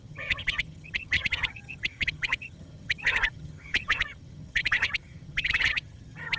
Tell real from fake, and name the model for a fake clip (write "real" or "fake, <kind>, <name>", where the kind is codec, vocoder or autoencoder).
fake, vocoder, HiFi-GAN